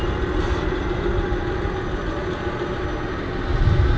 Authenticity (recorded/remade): recorded